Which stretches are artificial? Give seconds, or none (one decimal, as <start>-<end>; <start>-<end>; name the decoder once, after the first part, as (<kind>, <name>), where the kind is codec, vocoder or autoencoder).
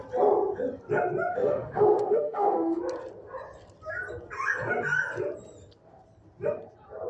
1.3-2.8 (autoencoder, DAC-VAE)